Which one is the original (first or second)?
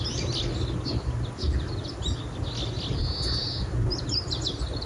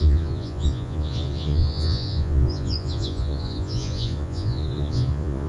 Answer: first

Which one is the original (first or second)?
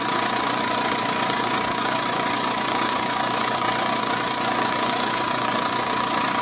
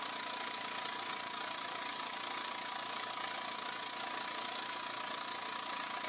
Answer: second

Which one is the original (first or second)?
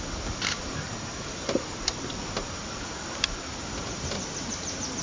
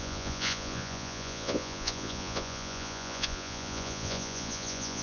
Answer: first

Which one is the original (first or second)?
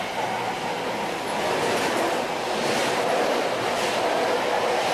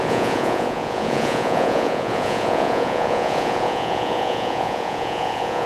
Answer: first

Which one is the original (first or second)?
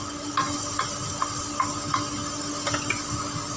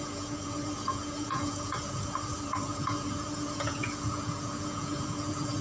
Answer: first